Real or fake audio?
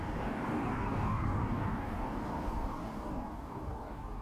fake